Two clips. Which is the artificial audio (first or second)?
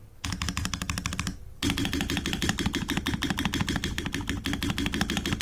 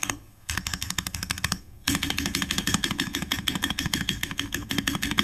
second